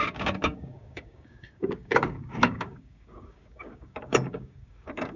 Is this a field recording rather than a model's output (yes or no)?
no